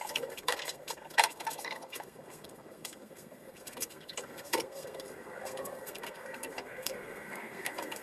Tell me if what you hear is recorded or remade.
remade